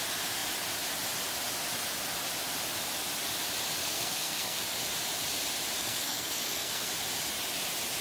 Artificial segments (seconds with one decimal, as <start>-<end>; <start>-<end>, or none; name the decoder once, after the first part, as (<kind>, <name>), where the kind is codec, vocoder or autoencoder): 3.8-4.6 (codec, SNAC); 5.8-6.9